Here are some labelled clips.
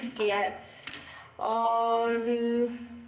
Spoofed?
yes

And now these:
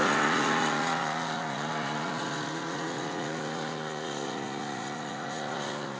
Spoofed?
yes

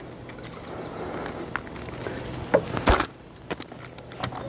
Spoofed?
no